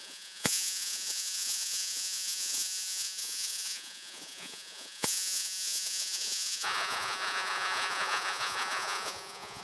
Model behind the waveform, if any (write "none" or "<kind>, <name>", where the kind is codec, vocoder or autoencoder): vocoder, Vocos